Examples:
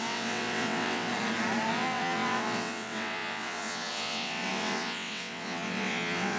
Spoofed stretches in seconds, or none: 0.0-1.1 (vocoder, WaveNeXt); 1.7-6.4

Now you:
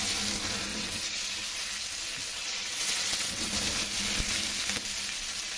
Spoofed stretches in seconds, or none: 0.7-1.3 (vocoder, WaveNeXt); 2.3-3.5

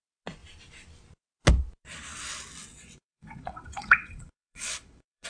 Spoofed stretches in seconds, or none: 2.7-5.3 (vocoder, WaveNeXt)

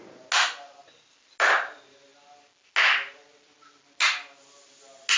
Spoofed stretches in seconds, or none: none

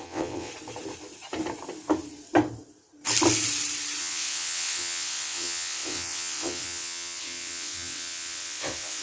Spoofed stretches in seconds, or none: 0.0-0.5 (vocoder, WaveNeXt); 4.0-9.0

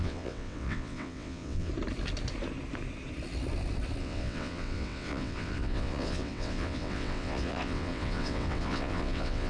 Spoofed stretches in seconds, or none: 0.0-1.7 (vocoder, WaveNeXt); 4.0-9.5

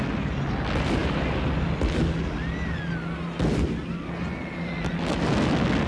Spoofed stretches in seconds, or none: none